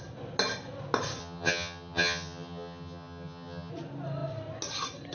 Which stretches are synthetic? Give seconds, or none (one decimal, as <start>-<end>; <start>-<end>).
1.2-3.7